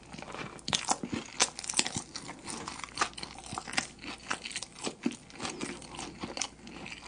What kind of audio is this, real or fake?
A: real